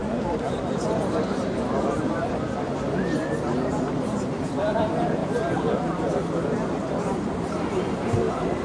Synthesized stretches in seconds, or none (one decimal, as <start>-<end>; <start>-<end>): none